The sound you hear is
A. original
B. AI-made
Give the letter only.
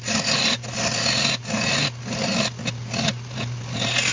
A